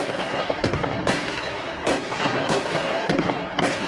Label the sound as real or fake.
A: fake